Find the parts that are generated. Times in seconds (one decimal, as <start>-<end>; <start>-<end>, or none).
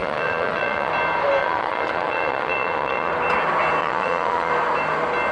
0.0-0.9; 1.4-3.1; 3.8-4.5